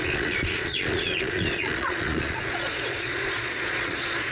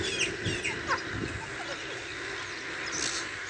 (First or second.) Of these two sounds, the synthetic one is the first